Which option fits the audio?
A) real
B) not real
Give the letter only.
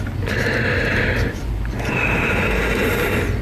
A